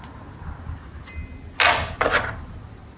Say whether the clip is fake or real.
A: real